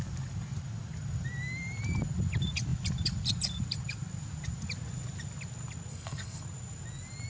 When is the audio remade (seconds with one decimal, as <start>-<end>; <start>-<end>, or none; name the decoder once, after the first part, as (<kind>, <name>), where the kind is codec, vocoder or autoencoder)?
5.9-6.4 (codec, SNAC)

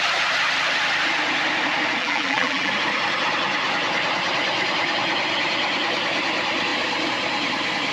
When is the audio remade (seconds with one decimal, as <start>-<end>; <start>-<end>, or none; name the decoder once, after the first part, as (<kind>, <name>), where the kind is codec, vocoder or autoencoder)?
2.0-2.7 (vocoder, BigVGAN v2)

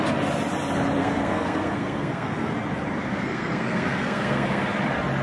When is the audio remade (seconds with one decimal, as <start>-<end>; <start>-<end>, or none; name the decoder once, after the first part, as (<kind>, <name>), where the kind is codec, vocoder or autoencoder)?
1.0-2.5 (codec, SNAC); 3.0-4.6

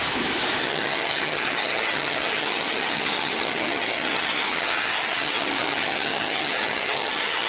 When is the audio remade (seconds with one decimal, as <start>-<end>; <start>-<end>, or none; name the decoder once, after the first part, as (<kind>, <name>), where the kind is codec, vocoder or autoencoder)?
0.6-7.5 (vocoder, HiFi-GAN)

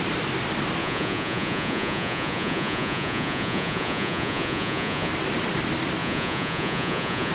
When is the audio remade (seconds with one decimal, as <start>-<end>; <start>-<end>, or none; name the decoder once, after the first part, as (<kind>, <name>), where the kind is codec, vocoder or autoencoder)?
0.8-5.1 (vocoder, Vocos); 6.0-7.3

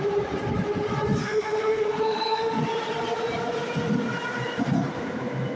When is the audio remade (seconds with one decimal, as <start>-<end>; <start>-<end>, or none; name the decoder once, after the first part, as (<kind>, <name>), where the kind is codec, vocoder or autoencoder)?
1.2-2.6 (autoencoder, DAC-VAE)